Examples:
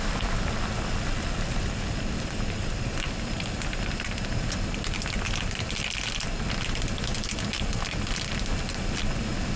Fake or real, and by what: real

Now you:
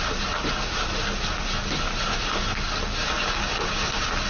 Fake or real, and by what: real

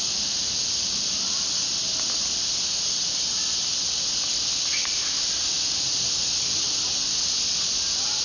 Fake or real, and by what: real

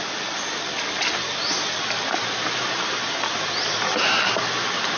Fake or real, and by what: real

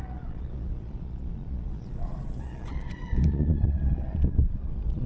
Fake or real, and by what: fake, vocoder, Vocos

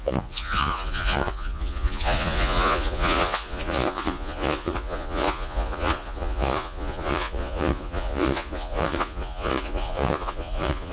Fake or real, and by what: fake, vocoder, Vocos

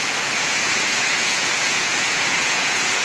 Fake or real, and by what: fake, vocoder, Vocos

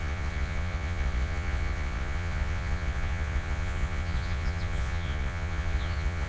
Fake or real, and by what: fake, vocoder, Vocos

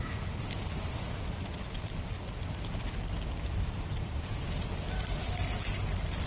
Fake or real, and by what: real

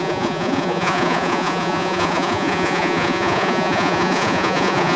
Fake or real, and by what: fake, vocoder, Vocos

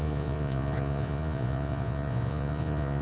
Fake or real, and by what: fake, vocoder, Vocos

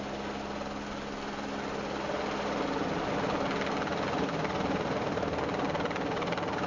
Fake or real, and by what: real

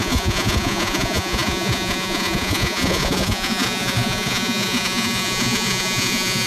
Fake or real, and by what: fake, vocoder, Vocos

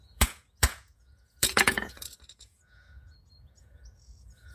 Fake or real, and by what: fake, vocoder, Vocos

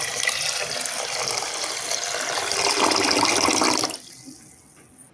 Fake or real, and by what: real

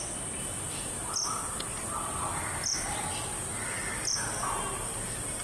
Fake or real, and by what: real